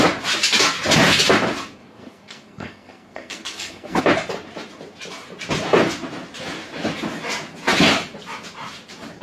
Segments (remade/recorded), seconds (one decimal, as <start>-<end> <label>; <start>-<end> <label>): 0.0-1.8 recorded; 1.8-4.0 remade; 4.0-9.2 recorded